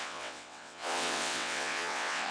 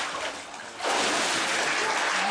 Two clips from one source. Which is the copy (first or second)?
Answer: first